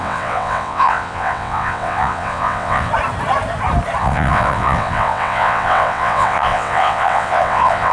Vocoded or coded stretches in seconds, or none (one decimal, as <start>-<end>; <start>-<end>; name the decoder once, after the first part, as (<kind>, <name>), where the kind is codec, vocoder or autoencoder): 0.0-2.9 (vocoder, WaveNeXt); 4.0-7.9